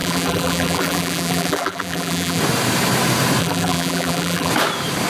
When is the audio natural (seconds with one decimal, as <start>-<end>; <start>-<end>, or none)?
2.4-3.4; 4.5-5.1